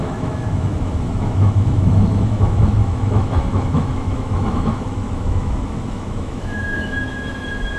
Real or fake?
fake